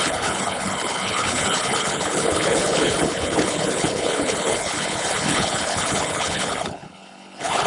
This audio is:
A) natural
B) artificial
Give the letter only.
B